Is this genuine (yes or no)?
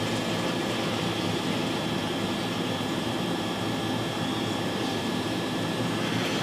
no